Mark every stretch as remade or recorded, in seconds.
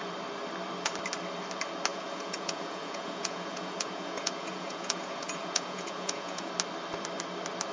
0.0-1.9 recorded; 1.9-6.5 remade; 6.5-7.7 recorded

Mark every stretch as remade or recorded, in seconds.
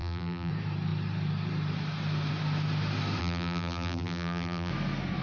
0.0-0.5 remade; 0.5-3.2 recorded; 3.2-4.7 remade; 4.7-5.2 recorded